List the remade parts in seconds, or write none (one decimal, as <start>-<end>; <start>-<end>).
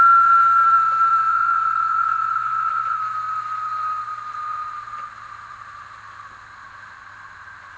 1.3-3.0